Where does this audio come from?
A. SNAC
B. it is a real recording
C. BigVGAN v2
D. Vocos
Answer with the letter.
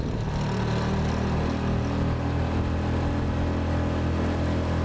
B